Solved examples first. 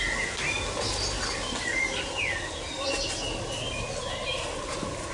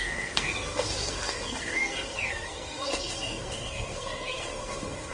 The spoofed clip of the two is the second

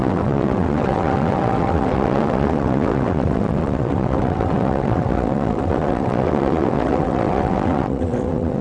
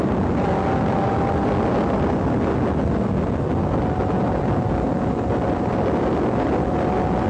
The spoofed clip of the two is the first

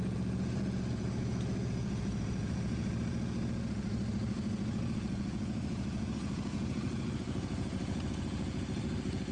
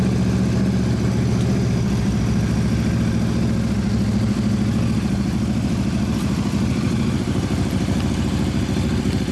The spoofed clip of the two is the first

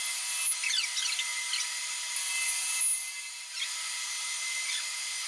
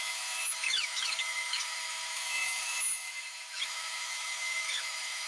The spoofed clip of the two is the second